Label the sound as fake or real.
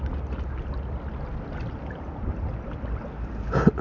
real